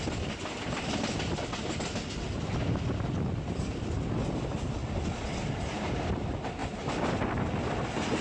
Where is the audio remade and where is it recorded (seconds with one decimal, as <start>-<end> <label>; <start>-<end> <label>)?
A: 0.0-8.2 recorded

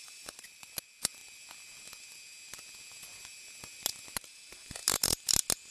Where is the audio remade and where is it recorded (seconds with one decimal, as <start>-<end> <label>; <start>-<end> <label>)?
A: 0.0-0.7 remade; 0.7-5.7 recorded

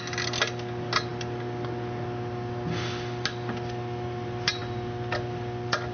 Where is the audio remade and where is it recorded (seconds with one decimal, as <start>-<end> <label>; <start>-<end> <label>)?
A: 0.0-5.9 recorded

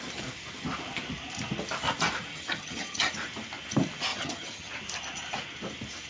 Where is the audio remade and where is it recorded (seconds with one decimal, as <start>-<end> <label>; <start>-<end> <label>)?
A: 0.0-2.3 recorded; 2.3-3.1 remade; 3.1-4.1 recorded; 4.1-4.7 remade; 4.7-6.1 recorded